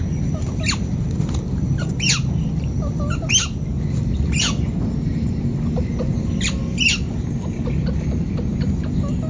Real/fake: real